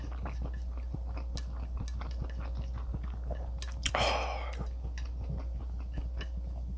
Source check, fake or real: real